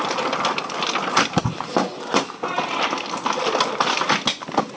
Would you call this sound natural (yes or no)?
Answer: yes